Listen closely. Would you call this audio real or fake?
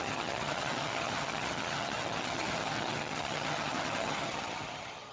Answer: fake